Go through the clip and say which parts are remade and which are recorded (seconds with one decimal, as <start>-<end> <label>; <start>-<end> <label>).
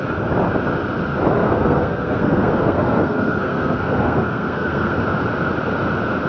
0.0-1.4 recorded; 1.4-5.0 remade; 5.0-6.3 recorded